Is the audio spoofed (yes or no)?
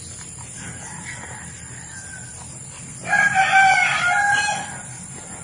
yes